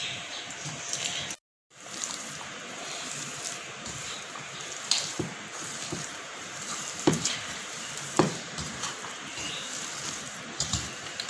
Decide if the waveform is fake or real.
fake